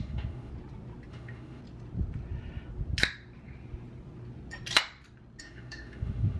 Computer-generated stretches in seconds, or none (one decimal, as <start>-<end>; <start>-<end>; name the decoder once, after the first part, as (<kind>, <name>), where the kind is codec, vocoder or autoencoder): 0.0-0.5 (autoencoder, DAC-VAE); 1.1-1.6; 5.4-6.4